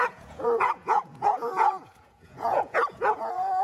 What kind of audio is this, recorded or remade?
remade